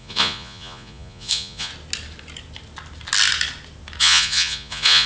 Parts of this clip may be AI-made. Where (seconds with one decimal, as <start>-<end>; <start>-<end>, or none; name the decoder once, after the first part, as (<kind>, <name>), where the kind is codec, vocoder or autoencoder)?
0.0-1.7 (vocoder, Vocos); 4.0-5.1